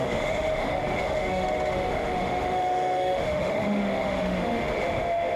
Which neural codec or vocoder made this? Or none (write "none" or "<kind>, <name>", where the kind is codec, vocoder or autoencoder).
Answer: autoencoder, DAC-VAE